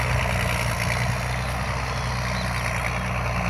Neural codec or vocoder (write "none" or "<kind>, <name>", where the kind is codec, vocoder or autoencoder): none